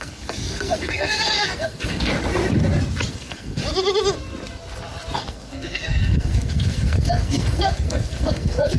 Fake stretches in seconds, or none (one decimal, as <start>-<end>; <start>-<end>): 0.0-2.1; 3.1-3.6; 5.2-8.8